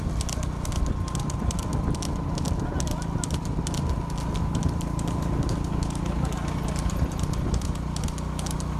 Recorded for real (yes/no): yes